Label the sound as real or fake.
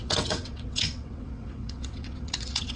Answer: fake